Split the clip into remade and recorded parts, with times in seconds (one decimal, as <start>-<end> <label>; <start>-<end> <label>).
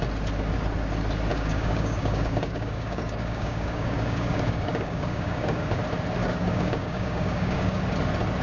0.0-1.3 recorded; 1.3-5.8 remade; 5.8-6.2 recorded; 6.2-7.8 remade; 7.8-8.4 recorded